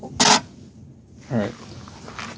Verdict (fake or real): real